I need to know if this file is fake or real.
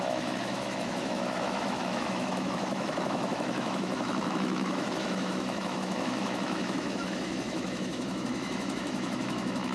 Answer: fake